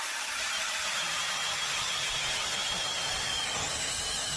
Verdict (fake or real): real